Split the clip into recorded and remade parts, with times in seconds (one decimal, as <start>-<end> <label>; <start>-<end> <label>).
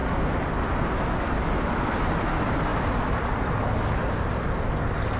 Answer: 0.0-5.2 recorded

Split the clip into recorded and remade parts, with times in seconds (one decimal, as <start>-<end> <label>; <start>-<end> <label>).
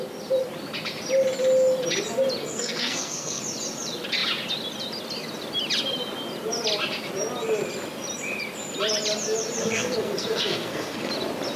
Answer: 0.0-2.4 recorded; 2.4-3.4 remade; 3.4-9.6 recorded; 9.6-11.1 remade; 11.1-11.6 recorded